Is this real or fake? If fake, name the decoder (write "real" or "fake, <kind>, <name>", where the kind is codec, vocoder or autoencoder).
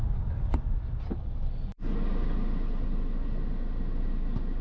real